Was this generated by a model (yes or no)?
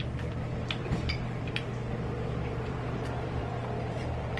yes